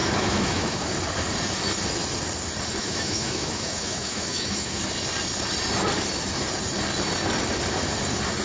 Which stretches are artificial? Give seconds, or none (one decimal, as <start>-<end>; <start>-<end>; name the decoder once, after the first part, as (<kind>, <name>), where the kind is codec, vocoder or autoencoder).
0.0-0.9 (autoencoder, DAC-VAE); 2.8-4.8